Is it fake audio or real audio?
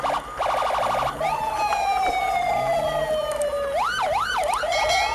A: real